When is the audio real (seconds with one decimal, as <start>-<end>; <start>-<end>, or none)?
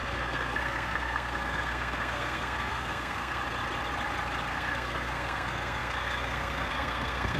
3.4-4.5